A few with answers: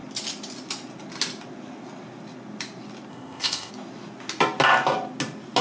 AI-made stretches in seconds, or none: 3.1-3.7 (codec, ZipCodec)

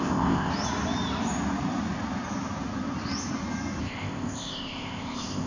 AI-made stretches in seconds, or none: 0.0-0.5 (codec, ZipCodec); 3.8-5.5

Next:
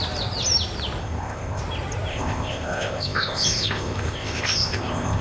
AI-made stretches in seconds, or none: 1.0-1.6 (codec, ZipCodec); 2.1-5.2

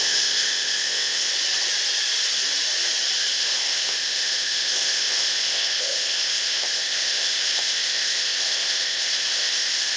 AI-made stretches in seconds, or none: 0.0-1.3 (codec, ZipCodec); 3.3-10.0